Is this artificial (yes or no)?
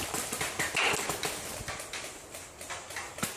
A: no